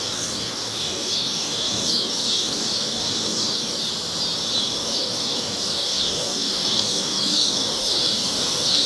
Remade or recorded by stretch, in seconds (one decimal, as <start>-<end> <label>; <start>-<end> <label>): 0.0-3.9 remade; 3.9-4.6 recorded; 4.6-8.9 remade